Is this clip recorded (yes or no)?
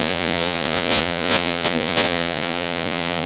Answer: no